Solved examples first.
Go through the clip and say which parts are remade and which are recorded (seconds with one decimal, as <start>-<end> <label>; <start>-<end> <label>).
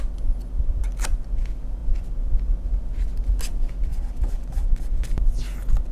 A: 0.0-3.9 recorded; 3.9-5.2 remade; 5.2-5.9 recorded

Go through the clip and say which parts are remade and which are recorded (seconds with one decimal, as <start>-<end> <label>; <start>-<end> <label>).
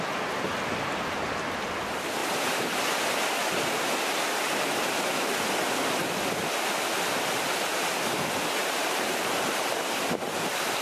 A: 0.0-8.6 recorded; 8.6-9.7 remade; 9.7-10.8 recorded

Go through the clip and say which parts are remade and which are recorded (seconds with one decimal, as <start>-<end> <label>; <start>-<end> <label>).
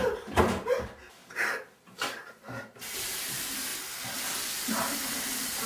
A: 0.0-1.2 remade; 1.2-1.8 recorded; 1.8-3.7 remade; 3.7-4.6 recorded; 4.6-5.7 remade